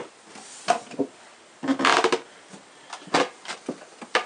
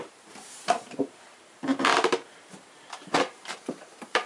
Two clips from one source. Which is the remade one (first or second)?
second